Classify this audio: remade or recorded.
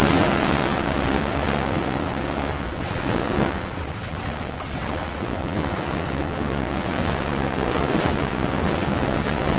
remade